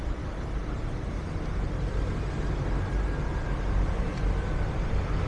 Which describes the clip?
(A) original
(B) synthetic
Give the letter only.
A